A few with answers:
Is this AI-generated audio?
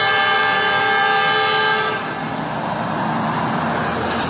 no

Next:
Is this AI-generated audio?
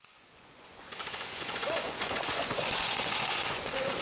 yes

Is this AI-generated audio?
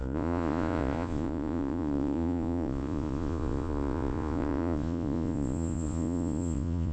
yes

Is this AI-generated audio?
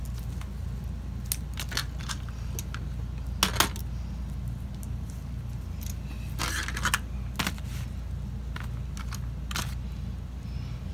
no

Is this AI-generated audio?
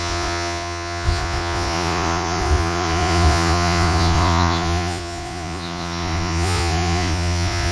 yes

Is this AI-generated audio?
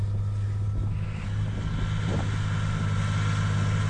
no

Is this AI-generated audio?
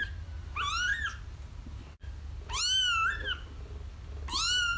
no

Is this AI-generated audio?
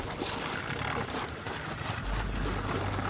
no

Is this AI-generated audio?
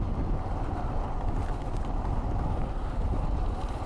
no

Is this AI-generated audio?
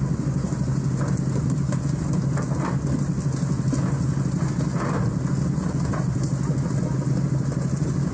no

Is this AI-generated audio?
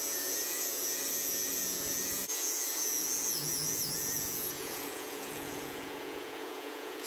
yes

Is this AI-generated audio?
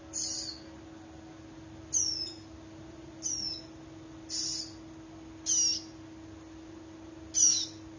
no